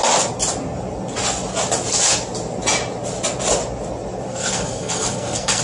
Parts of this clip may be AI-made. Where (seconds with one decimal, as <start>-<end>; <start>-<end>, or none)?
4.3-5.6